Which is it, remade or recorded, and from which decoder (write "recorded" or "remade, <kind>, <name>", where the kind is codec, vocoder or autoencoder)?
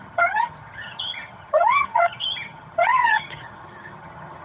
remade, vocoder, HiFi-GAN